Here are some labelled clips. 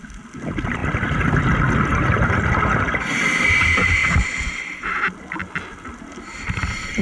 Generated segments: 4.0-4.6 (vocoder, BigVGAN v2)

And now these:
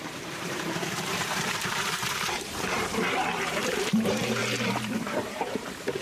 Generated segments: 0.0-4.4 (vocoder, BigVGAN v2); 5.1-6.0

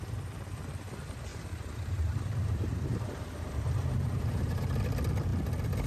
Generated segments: 1.3-4.8 (vocoder, BigVGAN v2)

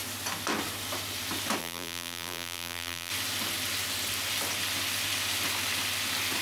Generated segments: 1.6-3.1 (vocoder, BigVGAN v2)

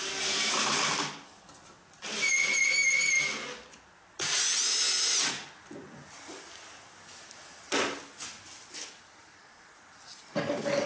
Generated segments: none